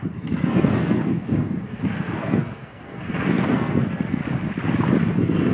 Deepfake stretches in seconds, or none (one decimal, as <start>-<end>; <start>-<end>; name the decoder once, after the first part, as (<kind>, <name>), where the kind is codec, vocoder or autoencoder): 0.0-4.2 (codec, SNAC); 5.1-5.5